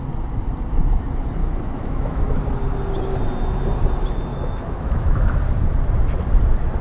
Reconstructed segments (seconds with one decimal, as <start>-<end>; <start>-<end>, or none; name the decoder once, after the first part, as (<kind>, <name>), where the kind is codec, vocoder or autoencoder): 1.4-2.2 (autoencoder, DAC-VAE); 4.3-5.3